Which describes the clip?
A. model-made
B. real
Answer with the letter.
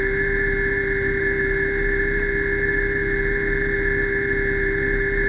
B